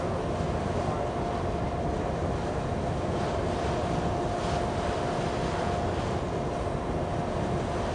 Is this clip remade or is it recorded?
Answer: recorded